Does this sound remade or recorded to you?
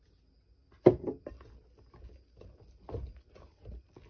recorded